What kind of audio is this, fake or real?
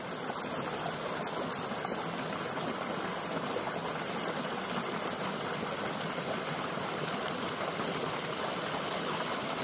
real